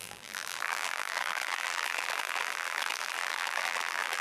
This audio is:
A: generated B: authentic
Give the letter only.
A